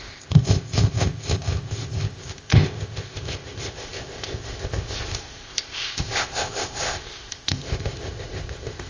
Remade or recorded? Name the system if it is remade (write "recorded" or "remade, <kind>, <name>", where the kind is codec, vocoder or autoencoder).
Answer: remade, codec, ZipCodec